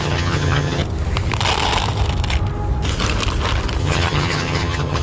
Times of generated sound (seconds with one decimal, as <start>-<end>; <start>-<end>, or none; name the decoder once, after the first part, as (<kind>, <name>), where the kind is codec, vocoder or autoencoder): 0.0-0.8 (vocoder, HiFi-GAN); 3.8-5.0

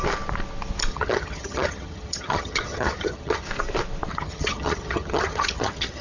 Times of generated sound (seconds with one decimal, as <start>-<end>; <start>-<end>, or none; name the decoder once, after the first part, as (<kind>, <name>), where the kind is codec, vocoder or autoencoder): 0.9-3.5 (vocoder, HiFi-GAN); 4.1-6.0

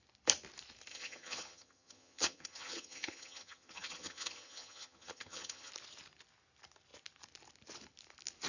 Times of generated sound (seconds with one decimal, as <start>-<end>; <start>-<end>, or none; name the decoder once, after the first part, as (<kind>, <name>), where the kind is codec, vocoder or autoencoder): 0.9-5.7 (vocoder, HiFi-GAN)

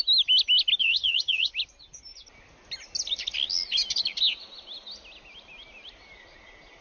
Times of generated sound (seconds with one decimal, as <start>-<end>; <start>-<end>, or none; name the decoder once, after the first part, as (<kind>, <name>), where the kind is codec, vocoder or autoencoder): 0.8-1.5 (vocoder, HiFi-GAN)

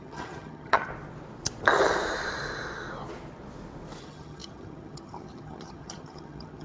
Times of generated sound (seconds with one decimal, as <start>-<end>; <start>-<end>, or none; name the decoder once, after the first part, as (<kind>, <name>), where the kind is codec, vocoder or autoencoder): 0.0-0.9 (vocoder, HiFi-GAN); 4.0-6.6

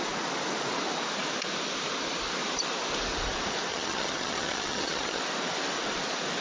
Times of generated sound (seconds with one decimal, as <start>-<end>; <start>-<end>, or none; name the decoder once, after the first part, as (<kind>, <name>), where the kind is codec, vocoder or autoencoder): 3.7-5.2 (vocoder, HiFi-GAN)